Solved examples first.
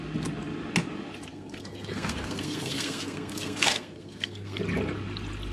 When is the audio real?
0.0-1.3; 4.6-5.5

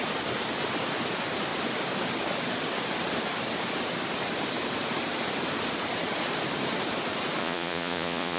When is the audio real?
0.0-7.4

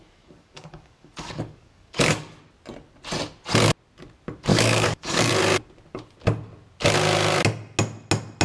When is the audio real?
2.4-4.5; 5.3-8.4

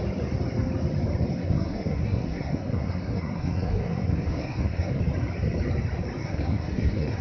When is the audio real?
0.0-1.4; 5.0-6.2

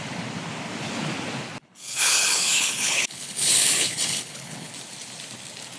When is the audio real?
0.0-1.6; 4.7-5.8

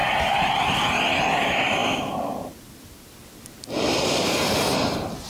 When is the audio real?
0.0-5.3

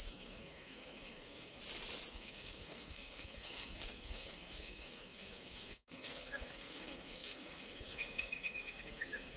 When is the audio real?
1.6-2.1

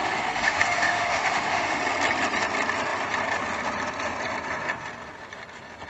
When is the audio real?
1.8-5.9